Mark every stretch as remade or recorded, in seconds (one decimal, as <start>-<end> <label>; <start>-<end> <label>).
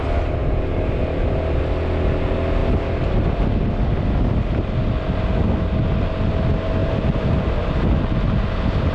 0.0-0.4 recorded; 0.4-1.0 remade; 1.0-6.8 recorded; 6.8-7.5 remade; 7.5-8.9 recorded